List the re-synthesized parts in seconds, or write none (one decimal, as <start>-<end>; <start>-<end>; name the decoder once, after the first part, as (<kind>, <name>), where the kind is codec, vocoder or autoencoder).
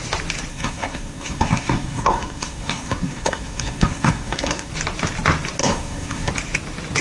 0.5-4.7 (codec, SNAC); 5.6-6.3